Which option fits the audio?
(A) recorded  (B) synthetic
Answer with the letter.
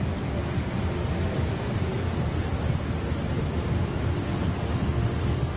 A